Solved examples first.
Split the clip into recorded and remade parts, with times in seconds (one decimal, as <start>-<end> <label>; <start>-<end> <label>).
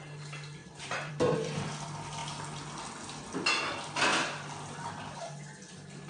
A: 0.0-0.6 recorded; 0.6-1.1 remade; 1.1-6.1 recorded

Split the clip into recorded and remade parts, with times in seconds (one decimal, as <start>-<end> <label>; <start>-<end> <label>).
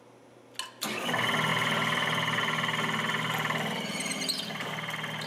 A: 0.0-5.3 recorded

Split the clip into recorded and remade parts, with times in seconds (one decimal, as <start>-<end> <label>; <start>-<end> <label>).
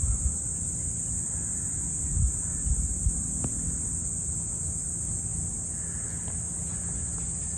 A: 0.0-7.6 recorded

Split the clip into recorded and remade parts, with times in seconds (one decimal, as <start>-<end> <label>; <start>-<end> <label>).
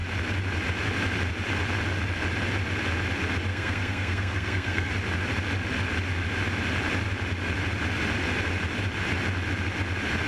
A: 0.0-3.5 recorded; 3.5-4.9 remade; 4.9-10.3 recorded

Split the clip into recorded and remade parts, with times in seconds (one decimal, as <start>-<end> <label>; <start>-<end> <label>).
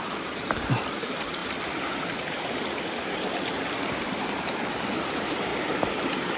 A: 0.0-1.4 remade; 1.4-5.1 recorded; 5.1-5.5 remade; 5.5-6.4 recorded